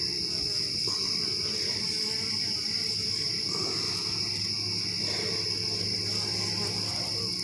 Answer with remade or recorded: recorded